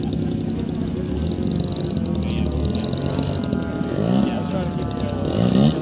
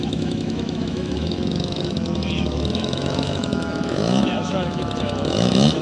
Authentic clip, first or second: first